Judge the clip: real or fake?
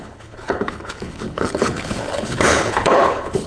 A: fake